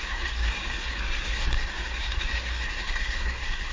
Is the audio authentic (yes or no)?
no